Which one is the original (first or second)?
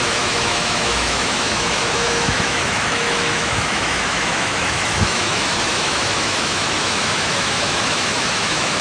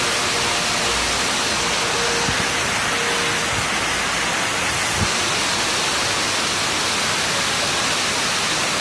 second